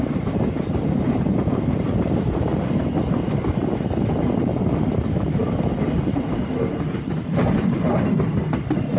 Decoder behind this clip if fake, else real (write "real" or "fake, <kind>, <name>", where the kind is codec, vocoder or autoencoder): real